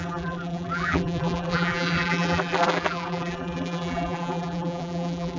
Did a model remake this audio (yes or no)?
yes